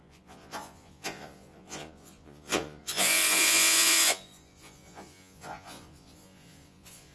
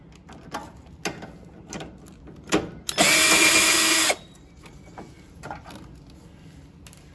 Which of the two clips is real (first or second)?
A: second